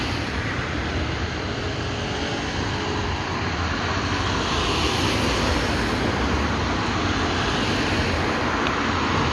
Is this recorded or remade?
recorded